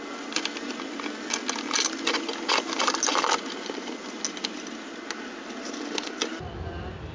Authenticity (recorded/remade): recorded